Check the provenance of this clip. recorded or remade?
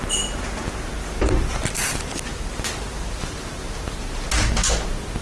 recorded